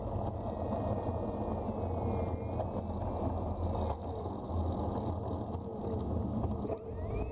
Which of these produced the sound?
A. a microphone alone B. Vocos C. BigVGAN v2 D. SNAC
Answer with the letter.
A